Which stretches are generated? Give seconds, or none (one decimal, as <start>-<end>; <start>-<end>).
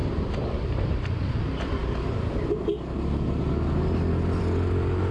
none